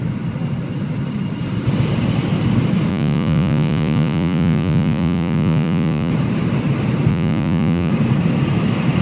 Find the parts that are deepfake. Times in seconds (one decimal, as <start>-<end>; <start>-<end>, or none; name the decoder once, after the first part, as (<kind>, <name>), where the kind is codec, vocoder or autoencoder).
2.9-6.1 (vocoder, Vocos); 7.1-7.9